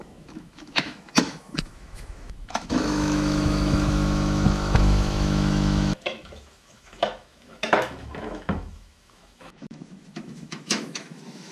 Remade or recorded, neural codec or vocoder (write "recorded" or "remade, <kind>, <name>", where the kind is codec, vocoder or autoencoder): remade, autoencoder, DAC-VAE